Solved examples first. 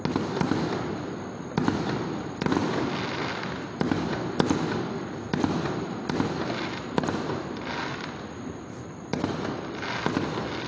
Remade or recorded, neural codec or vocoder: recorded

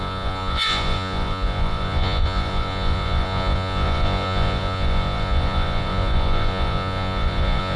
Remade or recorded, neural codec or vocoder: remade, vocoder, Vocos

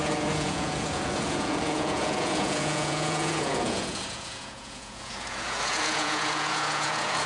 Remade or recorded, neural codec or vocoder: remade, vocoder, Vocos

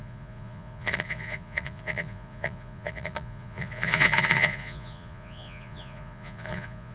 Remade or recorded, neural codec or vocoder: remade, vocoder, Vocos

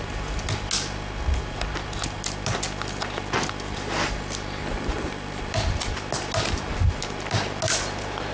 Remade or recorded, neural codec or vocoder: recorded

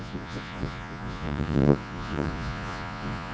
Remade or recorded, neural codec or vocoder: remade, vocoder, Vocos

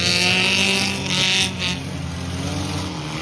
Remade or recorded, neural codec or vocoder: recorded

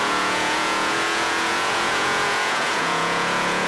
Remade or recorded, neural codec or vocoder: remade, vocoder, Vocos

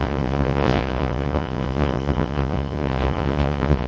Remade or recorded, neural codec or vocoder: remade, vocoder, Vocos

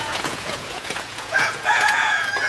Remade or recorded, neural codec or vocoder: remade, vocoder, Vocos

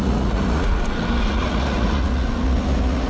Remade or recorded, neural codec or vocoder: remade, vocoder, Vocos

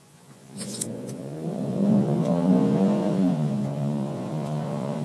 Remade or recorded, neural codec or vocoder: remade, vocoder, Vocos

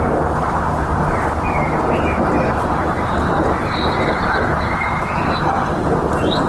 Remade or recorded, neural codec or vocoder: recorded